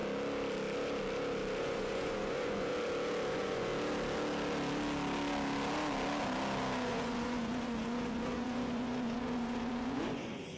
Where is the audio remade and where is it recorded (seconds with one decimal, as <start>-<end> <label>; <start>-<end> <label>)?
0.0-1.6 recorded; 1.6-2.7 remade; 2.7-3.3 recorded; 3.3-3.7 remade; 3.7-6.9 recorded; 6.9-10.6 remade